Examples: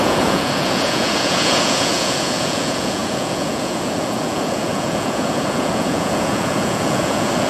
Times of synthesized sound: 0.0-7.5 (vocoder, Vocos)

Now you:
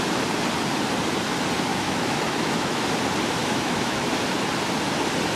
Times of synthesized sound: 1.7-2.8 (autoencoder, DAC-VAE); 3.4-4.0

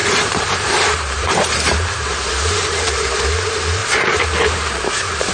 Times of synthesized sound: 0.0-3.2 (vocoder, BigVGAN v2); 3.8-5.3

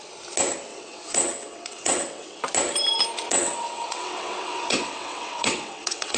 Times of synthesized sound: 0.7-2.4 (vocoder, WaveNeXt); 3.3-6.2

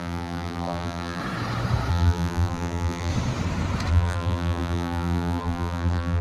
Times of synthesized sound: 0.0-1.2 (vocoder, BigVGAN v2); 1.9-3.1; 3.9-6.2

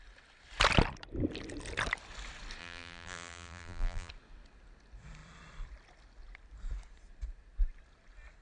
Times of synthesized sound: 2.6-4.1 (vocoder, BigVGAN v2)

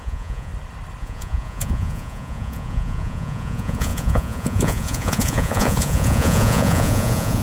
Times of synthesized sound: 0.0-0.5 (vocoder, Vocos); 1.0-7.4

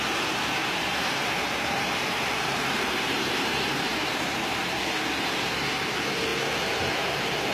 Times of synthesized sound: 0.6-4.6 (vocoder, BigVGAN v2)